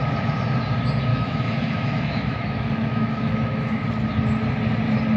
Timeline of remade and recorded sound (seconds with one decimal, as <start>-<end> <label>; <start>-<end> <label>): 0.0-1.1 recorded; 1.1-3.9 remade; 3.9-5.2 recorded